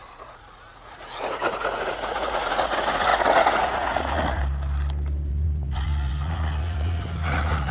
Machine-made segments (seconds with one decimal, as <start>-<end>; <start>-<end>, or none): 0.0-4.4; 5.3-7.7